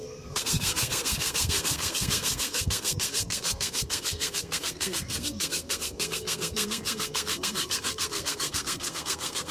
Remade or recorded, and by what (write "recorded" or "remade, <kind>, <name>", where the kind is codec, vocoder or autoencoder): remade, codec, SNAC